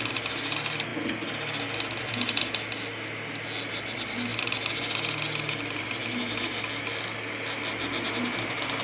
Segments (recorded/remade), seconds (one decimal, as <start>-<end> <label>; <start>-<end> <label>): 0.0-8.8 recorded